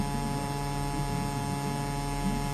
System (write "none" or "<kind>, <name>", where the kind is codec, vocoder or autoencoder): none